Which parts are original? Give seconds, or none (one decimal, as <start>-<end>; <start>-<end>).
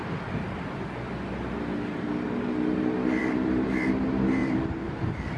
0.0-3.2; 3.9-4.4